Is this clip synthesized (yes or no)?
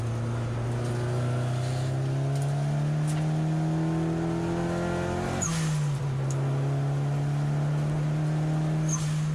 no